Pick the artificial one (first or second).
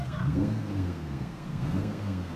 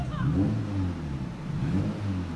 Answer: first